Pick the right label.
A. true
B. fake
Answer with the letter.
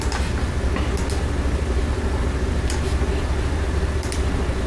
A